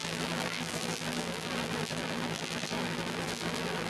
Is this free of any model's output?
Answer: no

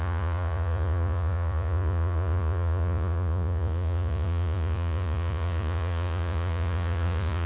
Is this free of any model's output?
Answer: no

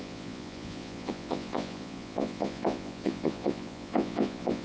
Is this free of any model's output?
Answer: no